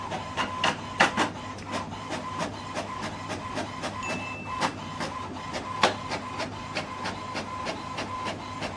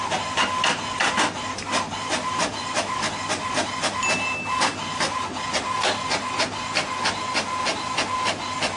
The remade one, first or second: first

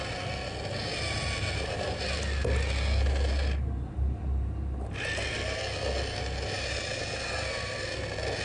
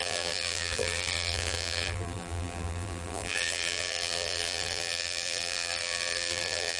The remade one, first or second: second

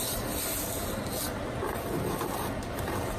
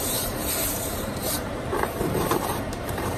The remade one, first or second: second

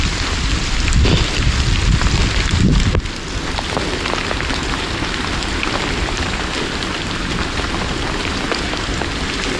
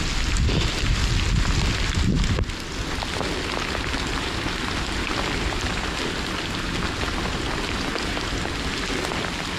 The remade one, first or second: first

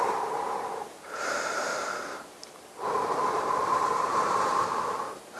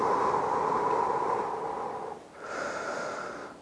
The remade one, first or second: first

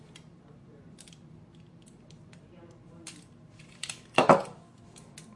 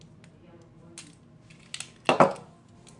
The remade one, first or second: first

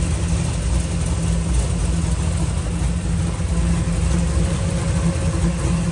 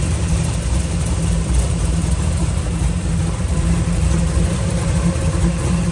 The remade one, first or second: second